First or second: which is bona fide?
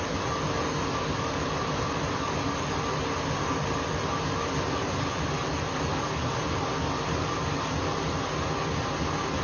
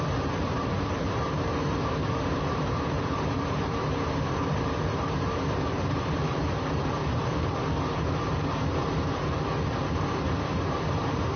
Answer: first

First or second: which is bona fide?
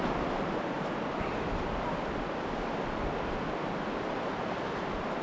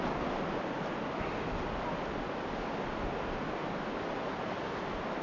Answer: second